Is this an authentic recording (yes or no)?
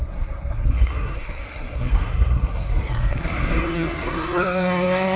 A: no